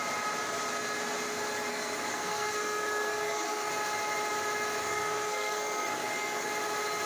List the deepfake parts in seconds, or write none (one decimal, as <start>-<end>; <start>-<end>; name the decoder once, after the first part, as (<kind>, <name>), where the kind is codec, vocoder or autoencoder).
1.7-3.7 (codec, SNAC); 4.8-6.5